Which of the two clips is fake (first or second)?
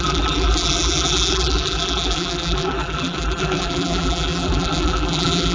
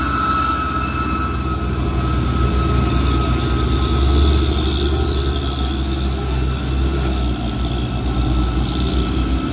first